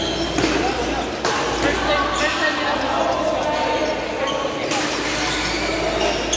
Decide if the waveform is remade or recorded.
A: recorded